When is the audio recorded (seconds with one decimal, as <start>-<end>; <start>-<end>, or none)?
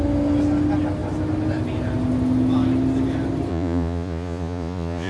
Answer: 0.0-3.5